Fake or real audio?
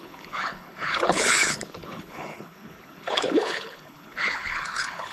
fake